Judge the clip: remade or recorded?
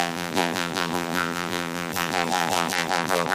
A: remade